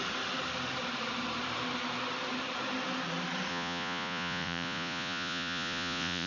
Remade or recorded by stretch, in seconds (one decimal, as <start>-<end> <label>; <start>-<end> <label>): 0.0-3.5 recorded; 3.5-6.3 remade

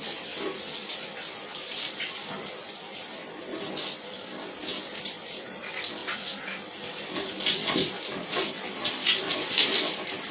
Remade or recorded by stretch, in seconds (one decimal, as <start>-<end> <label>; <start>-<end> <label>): 0.0-10.3 recorded

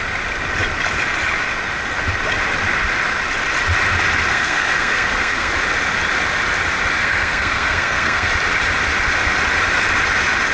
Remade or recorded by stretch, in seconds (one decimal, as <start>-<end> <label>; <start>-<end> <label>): 0.0-4.3 recorded; 4.3-5.5 remade; 5.5-7.0 recorded; 7.0-8.3 remade; 8.3-10.5 recorded

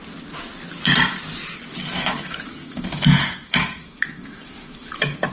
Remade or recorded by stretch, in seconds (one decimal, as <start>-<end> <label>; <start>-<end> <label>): 0.0-1.9 recorded; 1.9-5.3 remade